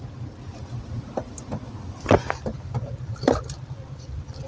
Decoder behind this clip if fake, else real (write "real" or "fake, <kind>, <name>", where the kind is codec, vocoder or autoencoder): real